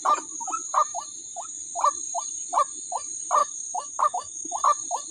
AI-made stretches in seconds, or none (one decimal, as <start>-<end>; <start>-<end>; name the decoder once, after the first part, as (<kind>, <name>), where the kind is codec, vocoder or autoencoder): 3.4-4.5 (codec, DAC)